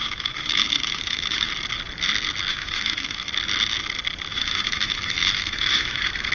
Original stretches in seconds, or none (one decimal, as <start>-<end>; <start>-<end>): 1.5-2.5; 3.3-4.3